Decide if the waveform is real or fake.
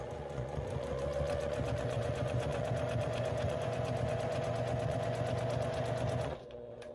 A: fake